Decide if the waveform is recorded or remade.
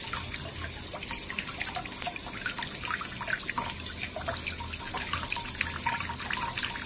recorded